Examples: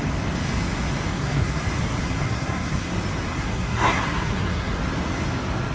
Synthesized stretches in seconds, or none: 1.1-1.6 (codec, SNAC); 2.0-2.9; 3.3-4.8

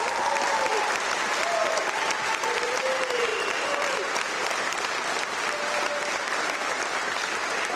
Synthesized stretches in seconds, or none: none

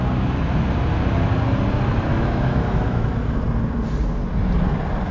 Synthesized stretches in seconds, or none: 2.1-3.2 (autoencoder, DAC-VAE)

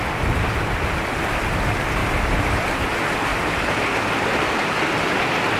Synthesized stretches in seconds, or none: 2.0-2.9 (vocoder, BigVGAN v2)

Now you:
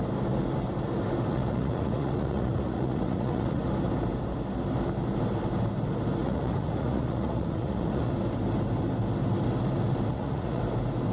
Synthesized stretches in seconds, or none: 1.3-3.6 (vocoder, Vocos); 6.2-8.1; 10.1-10.6

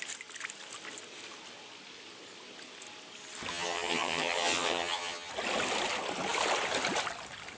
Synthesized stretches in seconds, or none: 3.5-5.3 (vocoder, HiFi-GAN)

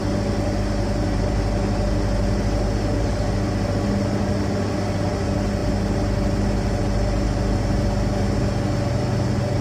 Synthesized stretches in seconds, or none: none

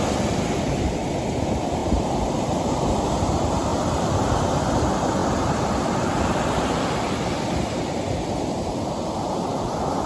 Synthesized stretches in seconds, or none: none